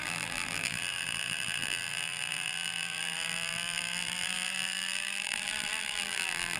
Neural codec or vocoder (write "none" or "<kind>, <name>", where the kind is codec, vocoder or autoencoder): vocoder, BigVGAN v2